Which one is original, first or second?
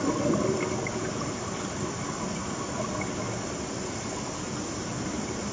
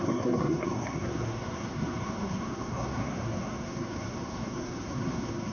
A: first